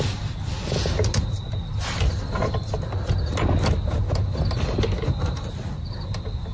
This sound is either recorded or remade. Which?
recorded